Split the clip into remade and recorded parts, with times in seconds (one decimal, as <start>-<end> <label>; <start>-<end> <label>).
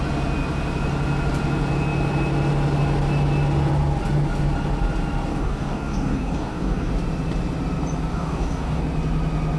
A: 0.0-5.3 recorded; 5.3-6.9 remade; 6.9-8.1 recorded; 8.1-8.8 remade; 8.8-9.6 recorded